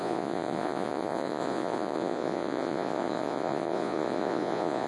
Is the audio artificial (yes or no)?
yes